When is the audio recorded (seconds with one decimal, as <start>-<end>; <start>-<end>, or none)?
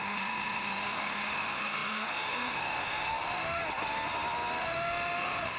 3.6-4.6